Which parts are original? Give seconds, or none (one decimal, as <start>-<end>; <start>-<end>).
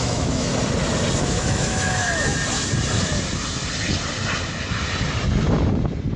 0.5-1.2; 2.3-6.2